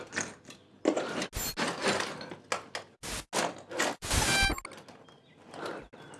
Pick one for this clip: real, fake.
real